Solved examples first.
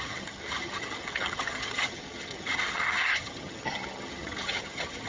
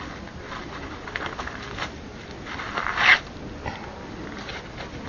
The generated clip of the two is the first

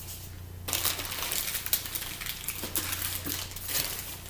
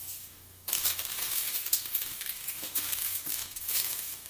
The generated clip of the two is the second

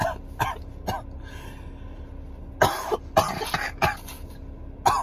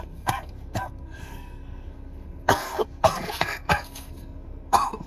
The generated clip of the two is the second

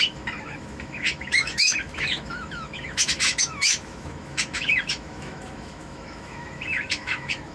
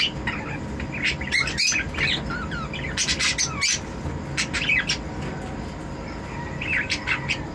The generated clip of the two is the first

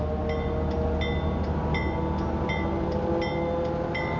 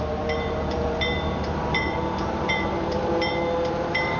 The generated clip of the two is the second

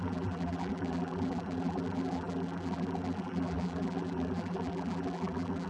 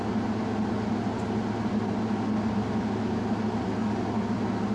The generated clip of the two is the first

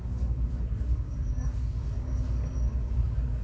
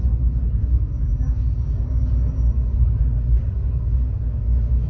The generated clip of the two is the first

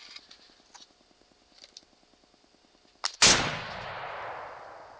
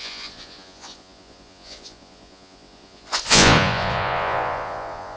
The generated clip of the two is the second